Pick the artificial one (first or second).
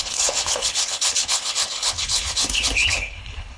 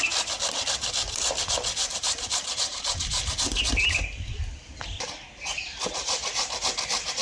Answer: first